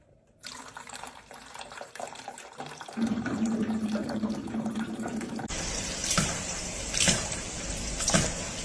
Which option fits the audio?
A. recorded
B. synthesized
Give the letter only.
B